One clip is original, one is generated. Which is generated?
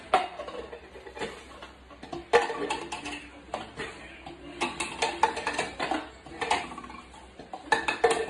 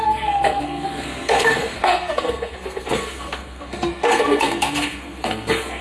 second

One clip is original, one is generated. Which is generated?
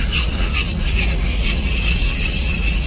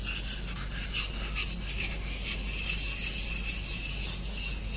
first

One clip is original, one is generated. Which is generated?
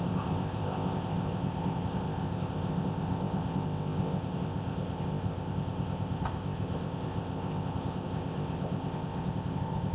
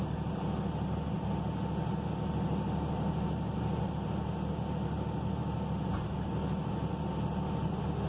first